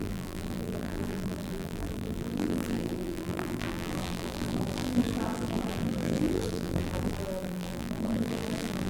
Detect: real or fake fake